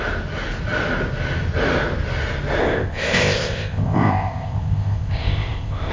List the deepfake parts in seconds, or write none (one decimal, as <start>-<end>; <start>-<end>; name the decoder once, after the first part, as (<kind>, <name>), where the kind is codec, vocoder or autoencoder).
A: 2.6-5.9 (codec, ZipCodec)

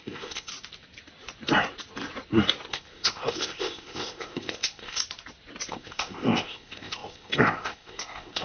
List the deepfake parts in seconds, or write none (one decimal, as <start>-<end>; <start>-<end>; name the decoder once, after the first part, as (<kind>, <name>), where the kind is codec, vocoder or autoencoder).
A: 0.0-0.5 (codec, ZipCodec); 2.7-5.0; 5.7-8.4

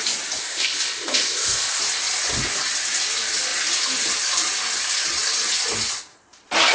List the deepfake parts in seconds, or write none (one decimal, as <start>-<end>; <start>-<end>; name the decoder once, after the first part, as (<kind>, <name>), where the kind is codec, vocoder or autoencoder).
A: 0.4-1.8 (codec, ZipCodec)

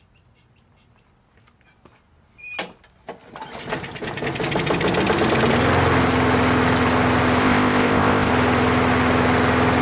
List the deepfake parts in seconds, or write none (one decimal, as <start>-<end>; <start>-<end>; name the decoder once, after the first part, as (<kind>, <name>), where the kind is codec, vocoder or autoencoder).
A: 7.4-8.3 (codec, ZipCodec)